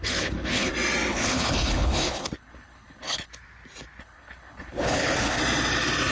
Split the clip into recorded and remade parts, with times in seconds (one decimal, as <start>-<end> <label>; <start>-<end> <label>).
0.0-0.7 remade; 0.7-1.1 recorded; 1.1-3.3 remade; 3.3-4.0 recorded; 4.0-5.4 remade; 5.4-6.1 recorded